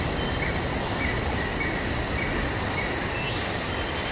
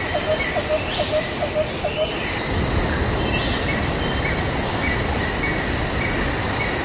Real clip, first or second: second